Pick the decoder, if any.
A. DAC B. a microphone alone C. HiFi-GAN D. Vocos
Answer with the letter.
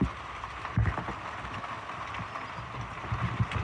B